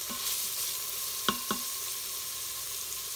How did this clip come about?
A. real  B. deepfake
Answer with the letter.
A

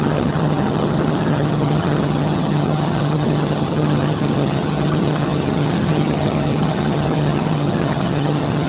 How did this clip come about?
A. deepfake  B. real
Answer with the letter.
A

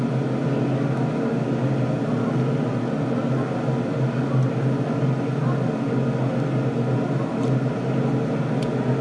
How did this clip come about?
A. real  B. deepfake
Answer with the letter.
A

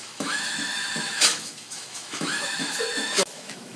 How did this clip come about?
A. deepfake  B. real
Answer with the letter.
A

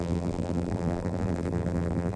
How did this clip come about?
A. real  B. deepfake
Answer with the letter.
B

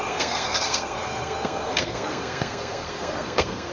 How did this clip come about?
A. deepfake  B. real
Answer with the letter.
A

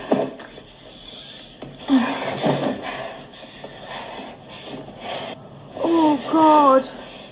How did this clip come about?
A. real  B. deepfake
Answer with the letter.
A